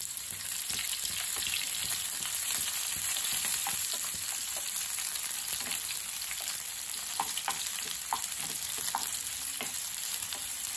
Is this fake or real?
fake